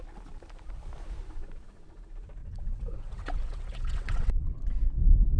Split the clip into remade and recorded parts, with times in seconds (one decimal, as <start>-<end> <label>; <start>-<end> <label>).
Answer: 0.0-2.4 recorded; 2.4-4.7 remade; 4.7-5.4 recorded